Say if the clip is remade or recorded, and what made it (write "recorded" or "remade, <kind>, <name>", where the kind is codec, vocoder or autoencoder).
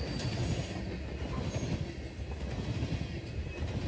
recorded